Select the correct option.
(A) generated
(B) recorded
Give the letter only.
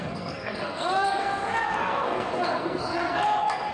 A